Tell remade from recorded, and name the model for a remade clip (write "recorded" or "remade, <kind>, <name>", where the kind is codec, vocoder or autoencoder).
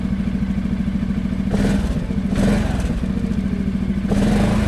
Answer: recorded